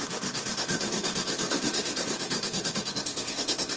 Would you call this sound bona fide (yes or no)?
no